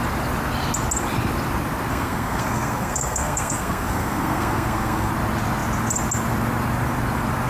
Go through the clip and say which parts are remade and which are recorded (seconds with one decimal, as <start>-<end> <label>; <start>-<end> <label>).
0.0-1.9 recorded; 1.9-5.1 remade; 5.1-7.5 recorded